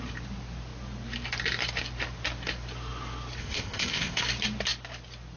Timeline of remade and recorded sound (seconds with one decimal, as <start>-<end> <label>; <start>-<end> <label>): 0.0-3.4 recorded; 3.4-4.2 remade; 4.2-5.4 recorded